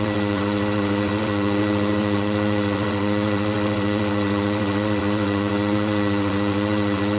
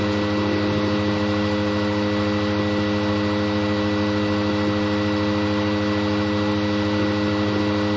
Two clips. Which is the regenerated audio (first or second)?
first